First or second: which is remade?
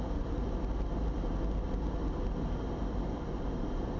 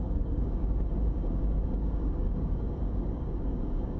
second